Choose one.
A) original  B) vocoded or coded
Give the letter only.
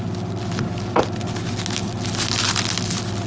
A